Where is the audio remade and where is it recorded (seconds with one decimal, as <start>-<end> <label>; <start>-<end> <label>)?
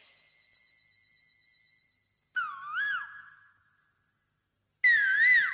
0.0-2.5 recorded; 2.5-3.7 remade; 3.7-5.5 recorded